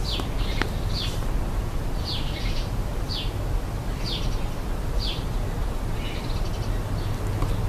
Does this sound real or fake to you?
real